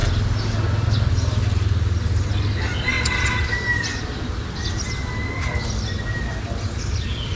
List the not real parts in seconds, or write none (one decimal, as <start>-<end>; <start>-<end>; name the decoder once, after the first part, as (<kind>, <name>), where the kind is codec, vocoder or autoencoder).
none